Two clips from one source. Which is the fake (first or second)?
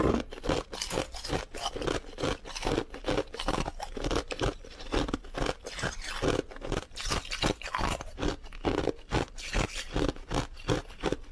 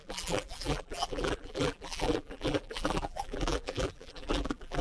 second